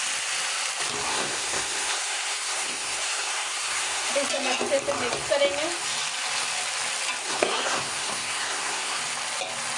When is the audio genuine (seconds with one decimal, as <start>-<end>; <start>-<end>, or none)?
0.0-1.1; 4.1-7.2; 9.0-9.8